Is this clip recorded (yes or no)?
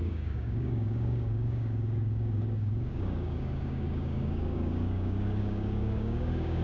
no